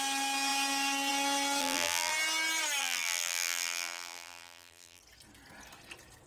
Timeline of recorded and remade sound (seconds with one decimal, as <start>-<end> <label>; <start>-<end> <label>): 0.0-1.6 recorded; 1.6-2.1 remade; 2.1-2.8 recorded; 2.8-5.0 remade; 5.0-6.3 recorded